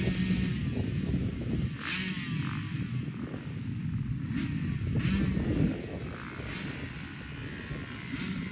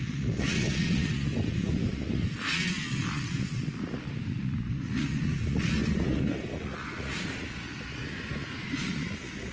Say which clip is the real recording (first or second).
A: first